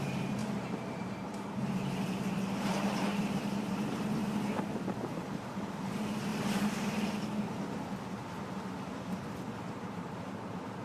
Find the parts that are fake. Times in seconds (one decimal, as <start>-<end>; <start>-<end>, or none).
0.0-4.2; 5.1-6.3; 9.6-10.8